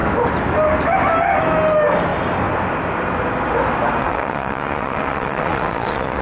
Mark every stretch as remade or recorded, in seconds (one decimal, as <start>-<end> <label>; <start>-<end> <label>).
0.0-4.0 recorded; 4.0-6.2 remade